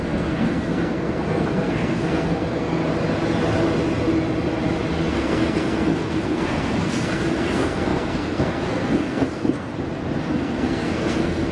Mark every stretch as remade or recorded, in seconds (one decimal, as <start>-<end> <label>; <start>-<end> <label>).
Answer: 0.0-2.8 remade; 2.8-5.1 recorded; 5.1-9.7 remade; 9.7-10.2 recorded; 10.2-11.5 remade